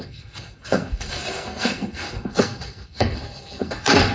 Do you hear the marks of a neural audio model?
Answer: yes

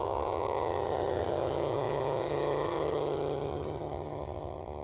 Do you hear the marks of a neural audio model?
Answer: yes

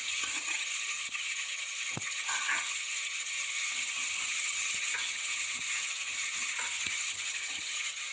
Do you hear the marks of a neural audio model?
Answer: yes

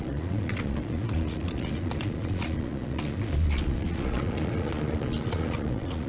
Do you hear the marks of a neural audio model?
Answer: yes